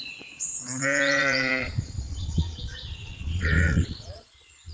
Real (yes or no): no